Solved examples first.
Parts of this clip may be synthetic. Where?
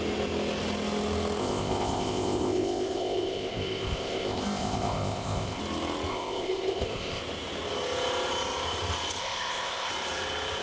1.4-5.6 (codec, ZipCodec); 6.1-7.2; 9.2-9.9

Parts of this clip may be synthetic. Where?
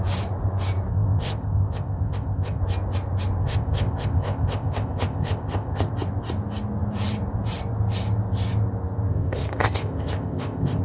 0.9-2.6 (codec, ZipCodec); 3.4-5.9; 9.1-10.8